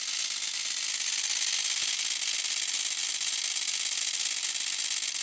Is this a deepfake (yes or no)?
no